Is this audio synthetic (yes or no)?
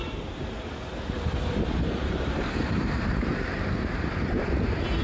yes